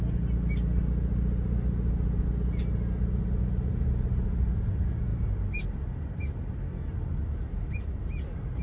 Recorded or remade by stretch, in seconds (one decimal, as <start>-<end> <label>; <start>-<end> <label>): 0.0-8.6 recorded